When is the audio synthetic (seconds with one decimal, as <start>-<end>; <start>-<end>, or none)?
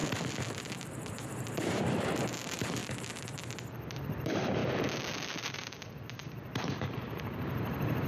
0.6-2.8; 4.0-4.6; 5.4-8.1